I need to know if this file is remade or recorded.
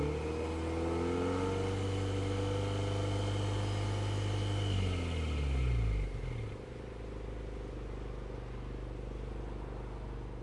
recorded